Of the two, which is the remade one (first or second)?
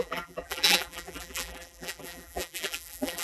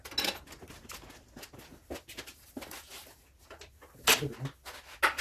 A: first